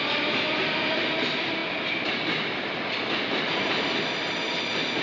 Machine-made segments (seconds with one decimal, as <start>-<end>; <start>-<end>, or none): none